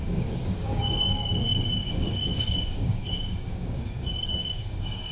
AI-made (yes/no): yes